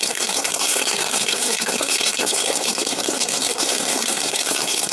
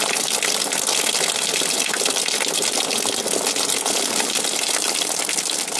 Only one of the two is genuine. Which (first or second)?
second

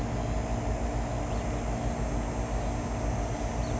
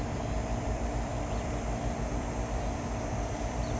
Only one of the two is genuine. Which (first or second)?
first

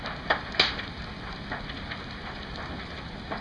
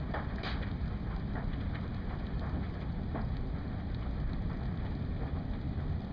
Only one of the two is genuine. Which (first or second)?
first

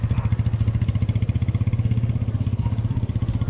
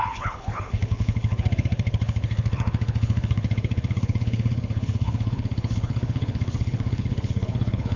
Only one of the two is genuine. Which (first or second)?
first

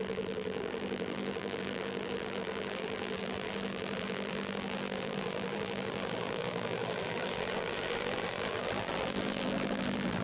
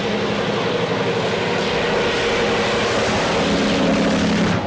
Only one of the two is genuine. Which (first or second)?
second